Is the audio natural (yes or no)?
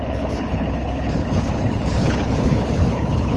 no